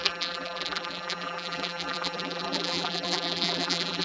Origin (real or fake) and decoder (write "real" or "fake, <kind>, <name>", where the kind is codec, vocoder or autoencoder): fake, vocoder, BigVGAN v2